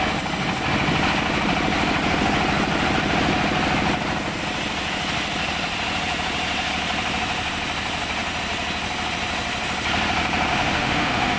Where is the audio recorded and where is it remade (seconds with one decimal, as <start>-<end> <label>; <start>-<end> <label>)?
0.0-10.5 recorded; 10.5-11.4 remade